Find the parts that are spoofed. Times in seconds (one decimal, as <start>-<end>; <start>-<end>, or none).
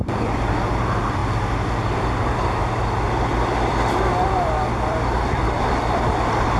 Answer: 0.0-1.2; 3.1-6.6